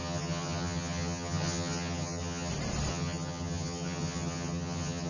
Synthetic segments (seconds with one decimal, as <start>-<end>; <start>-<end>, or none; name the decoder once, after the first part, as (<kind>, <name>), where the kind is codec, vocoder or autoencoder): 0.0-2.5 (vocoder, HiFi-GAN); 2.9-5.1

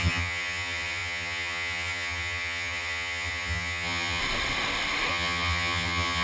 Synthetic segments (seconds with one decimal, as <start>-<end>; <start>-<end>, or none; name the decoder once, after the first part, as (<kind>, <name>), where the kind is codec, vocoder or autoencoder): 0.0-4.2 (vocoder, HiFi-GAN); 5.1-6.2

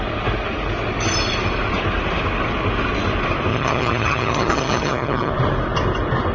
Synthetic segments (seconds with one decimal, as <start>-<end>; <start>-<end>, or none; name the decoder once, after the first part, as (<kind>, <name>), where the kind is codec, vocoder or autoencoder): 3.5-5.3 (vocoder, HiFi-GAN)

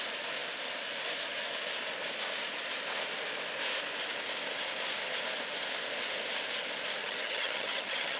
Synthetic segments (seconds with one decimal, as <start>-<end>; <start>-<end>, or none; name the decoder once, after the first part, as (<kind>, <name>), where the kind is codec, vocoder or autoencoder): 7.0-8.2 (vocoder, HiFi-GAN)